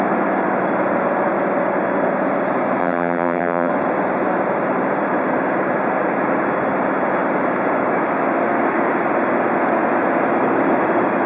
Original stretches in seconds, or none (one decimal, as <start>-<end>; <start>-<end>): 0.0-2.8; 3.7-11.3